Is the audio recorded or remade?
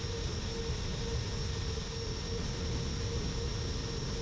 recorded